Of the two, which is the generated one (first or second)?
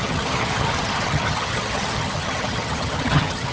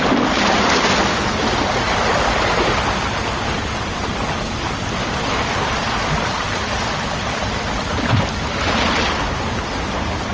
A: first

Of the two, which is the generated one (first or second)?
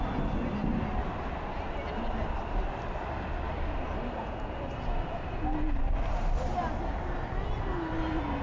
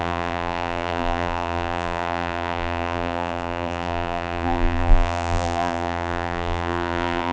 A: second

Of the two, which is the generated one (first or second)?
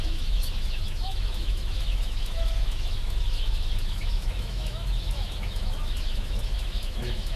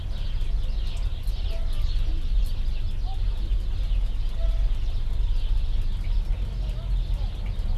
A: first